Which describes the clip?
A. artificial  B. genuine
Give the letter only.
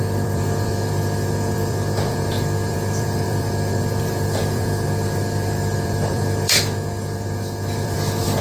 A